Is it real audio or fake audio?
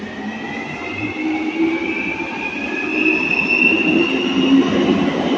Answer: real